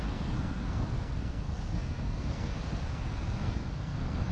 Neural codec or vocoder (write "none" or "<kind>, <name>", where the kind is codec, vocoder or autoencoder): codec, SNAC